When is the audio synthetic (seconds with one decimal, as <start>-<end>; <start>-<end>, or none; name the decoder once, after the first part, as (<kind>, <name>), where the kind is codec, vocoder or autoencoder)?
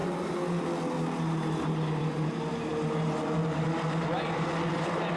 none